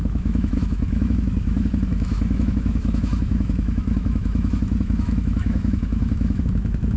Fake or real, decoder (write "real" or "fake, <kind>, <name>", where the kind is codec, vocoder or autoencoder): fake, autoencoder, DAC-VAE